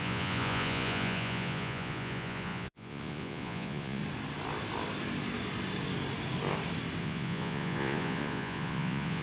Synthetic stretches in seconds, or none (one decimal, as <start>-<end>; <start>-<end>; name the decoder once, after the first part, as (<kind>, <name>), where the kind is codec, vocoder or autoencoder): 0.0-4.0 (vocoder, Vocos); 7.0-9.2